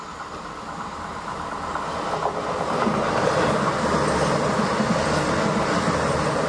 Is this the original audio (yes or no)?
yes